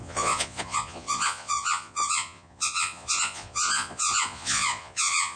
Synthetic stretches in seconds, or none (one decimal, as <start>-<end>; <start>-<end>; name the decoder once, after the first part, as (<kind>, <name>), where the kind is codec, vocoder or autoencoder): 0.0-5.4 (vocoder, Vocos)